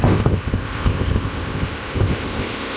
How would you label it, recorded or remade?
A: remade